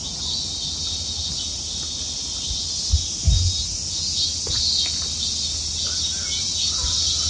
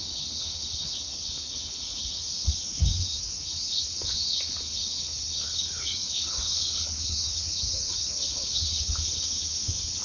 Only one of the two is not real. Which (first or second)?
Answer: second